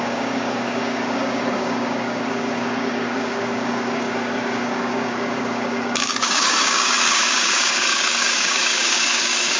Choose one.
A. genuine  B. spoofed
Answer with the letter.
B